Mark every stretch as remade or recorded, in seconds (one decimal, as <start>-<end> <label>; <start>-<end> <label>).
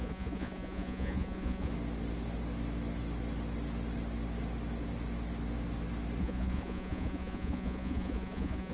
0.0-1.7 remade; 1.7-6.2 recorded; 6.2-8.7 remade